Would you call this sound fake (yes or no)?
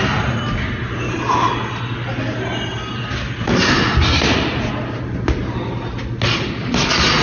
no